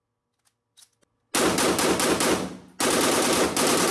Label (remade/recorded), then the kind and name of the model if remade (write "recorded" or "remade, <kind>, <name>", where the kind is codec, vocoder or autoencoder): recorded